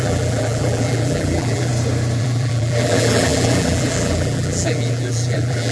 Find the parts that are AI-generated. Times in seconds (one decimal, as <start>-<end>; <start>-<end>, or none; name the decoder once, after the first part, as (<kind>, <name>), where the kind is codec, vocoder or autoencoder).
0.0-1.7 (vocoder, BigVGAN v2); 2.2-5.7